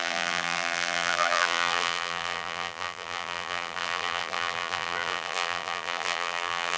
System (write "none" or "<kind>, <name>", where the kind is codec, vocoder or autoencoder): vocoder, BigVGAN v2